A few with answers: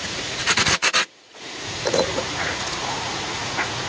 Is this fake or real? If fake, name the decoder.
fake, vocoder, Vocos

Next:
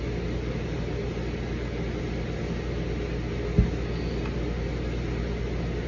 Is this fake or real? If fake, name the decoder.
real